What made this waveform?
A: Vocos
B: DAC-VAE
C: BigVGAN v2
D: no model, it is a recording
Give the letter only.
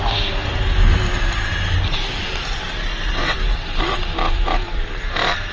C